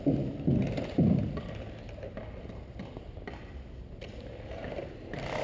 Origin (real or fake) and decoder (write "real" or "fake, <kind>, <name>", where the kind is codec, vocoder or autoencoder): real